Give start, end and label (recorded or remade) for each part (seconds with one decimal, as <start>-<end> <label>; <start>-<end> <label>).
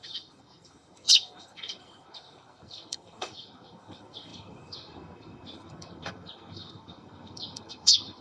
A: 0.0-8.2 remade